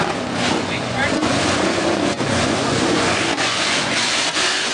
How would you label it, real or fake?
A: fake